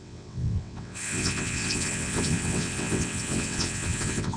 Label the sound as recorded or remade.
remade